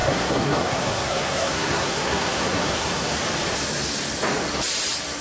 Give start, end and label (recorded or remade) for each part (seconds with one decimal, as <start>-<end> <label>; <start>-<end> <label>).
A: 0.0-3.1 remade; 3.1-5.2 recorded